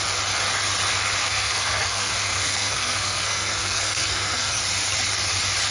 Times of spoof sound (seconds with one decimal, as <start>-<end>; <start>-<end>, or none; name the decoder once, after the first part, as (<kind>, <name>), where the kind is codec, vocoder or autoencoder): 1.2-4.6 (codec, SNAC)